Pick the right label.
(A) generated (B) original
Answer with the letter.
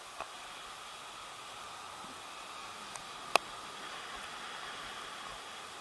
B